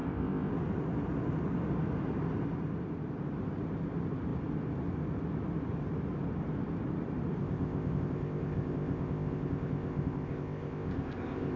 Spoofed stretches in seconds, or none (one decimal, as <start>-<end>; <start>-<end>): 0.0-0.5; 7.4-11.6